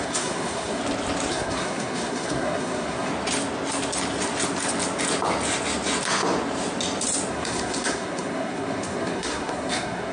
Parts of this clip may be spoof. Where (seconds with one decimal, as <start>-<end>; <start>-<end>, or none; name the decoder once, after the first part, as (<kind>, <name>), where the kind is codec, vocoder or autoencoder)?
0.0-0.8 (codec, SNAC); 1.3-3.1; 7.3-10.1